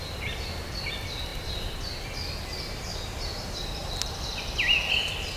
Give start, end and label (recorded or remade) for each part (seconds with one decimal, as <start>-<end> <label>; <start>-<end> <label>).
0.0-3.8 recorded; 3.8-4.3 remade; 4.3-5.4 recorded